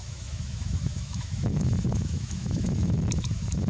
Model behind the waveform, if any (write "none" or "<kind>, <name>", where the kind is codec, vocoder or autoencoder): autoencoder, DAC-VAE